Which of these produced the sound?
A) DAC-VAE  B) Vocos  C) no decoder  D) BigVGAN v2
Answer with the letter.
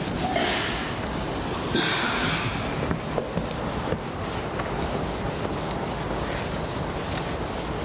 C